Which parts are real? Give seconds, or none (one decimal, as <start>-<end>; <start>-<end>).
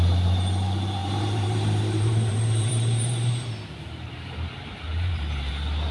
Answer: 0.0-1.0; 4.5-4.9; 5.5-5.9